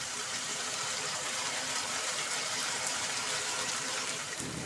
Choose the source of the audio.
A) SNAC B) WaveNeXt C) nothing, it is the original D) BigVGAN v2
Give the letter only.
D